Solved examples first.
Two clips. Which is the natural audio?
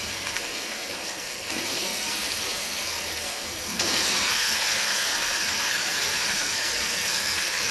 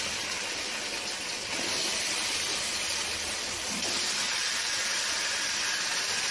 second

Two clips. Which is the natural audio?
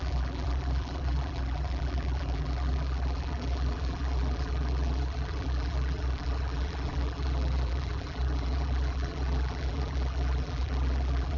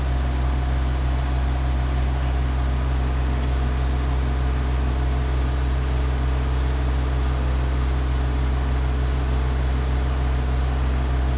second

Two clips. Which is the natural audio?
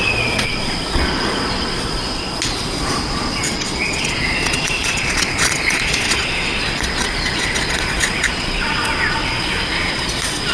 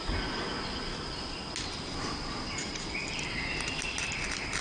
second